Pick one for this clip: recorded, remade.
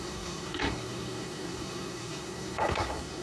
remade